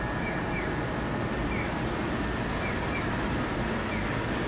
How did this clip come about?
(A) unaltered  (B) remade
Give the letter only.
A